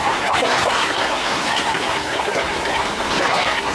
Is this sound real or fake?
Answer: fake